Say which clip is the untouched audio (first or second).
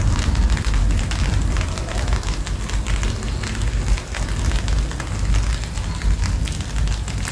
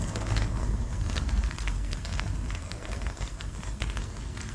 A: first